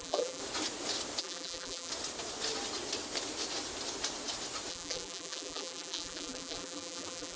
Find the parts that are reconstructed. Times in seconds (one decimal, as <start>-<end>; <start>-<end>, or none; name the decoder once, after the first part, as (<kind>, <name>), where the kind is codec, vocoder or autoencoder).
0.0-0.4 (vocoder, BigVGAN v2); 1.2-1.9; 4.7-7.4